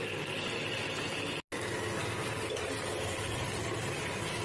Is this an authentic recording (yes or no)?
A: yes